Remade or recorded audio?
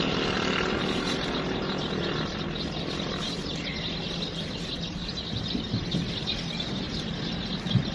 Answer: recorded